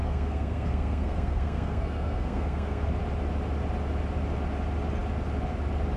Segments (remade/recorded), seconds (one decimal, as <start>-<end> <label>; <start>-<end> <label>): 0.0-2.9 remade; 2.9-6.0 recorded